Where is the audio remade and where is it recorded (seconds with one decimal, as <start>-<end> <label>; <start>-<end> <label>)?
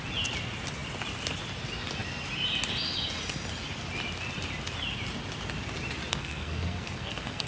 0.0-6.1 recorded; 6.1-7.5 remade